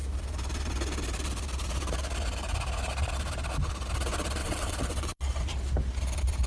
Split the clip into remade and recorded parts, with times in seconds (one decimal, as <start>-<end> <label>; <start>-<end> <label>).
0.0-4.4 recorded; 4.4-5.3 remade; 5.3-6.5 recorded